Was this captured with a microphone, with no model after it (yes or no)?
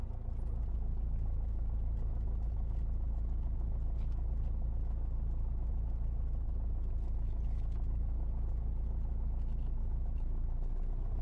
yes